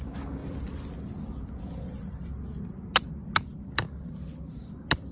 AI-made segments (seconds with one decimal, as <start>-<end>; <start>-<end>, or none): none